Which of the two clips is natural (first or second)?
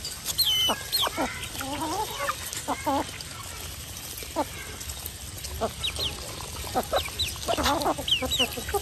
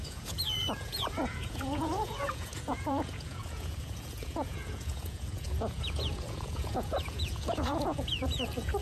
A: first